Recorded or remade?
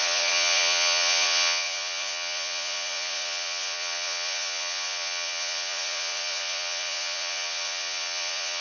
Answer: remade